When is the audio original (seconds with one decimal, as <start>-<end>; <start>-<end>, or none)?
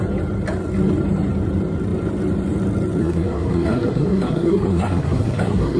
0.0-3.0